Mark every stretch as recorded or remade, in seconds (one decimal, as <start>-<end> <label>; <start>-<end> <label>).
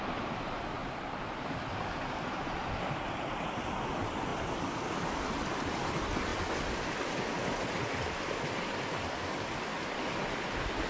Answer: 0.0-0.8 recorded; 0.8-3.6 remade; 3.6-4.3 recorded; 4.3-5.3 remade; 5.3-10.9 recorded